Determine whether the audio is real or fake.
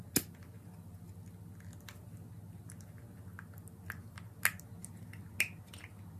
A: real